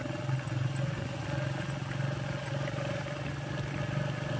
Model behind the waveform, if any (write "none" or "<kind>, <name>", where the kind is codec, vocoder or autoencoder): none